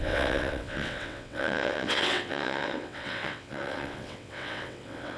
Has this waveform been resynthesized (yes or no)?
yes